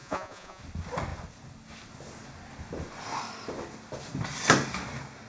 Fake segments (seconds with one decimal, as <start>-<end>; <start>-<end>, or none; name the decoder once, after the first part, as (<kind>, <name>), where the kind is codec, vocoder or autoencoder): 0.0-0.6 (vocoder, Vocos)